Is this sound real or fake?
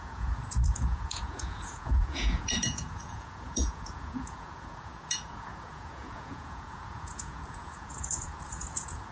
fake